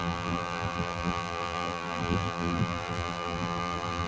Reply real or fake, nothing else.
fake